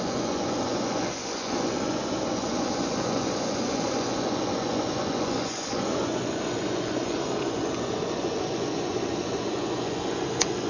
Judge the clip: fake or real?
fake